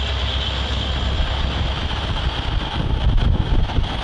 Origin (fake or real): real